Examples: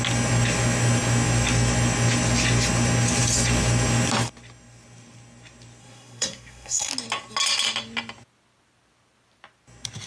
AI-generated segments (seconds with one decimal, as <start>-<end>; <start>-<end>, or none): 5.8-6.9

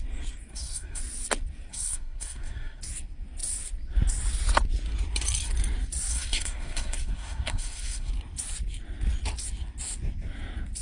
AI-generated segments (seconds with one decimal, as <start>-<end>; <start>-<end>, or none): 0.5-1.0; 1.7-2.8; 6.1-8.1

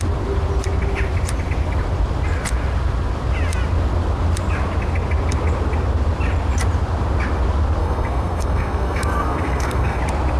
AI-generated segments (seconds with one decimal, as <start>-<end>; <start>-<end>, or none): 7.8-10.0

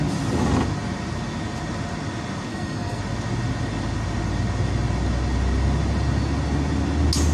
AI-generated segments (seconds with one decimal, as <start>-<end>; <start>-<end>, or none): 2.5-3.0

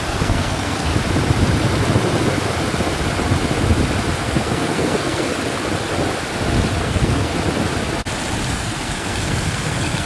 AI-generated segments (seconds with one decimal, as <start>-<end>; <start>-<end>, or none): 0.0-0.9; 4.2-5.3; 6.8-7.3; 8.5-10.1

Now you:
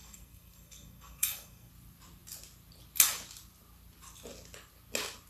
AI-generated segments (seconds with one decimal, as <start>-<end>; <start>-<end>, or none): 0.0-1.7